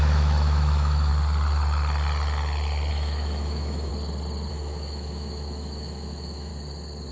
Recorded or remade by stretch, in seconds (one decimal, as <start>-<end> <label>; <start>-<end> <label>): 0.0-1.1 remade; 1.1-2.9 recorded; 2.9-3.9 remade; 3.9-4.5 recorded; 4.5-6.5 remade; 6.5-7.1 recorded